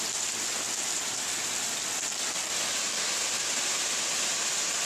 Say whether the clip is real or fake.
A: real